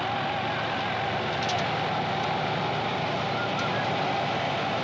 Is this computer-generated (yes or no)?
no